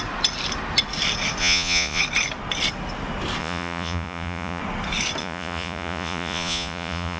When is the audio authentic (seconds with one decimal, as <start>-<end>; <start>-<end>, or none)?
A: 0.0-1.4; 2.0-3.4; 4.6-5.2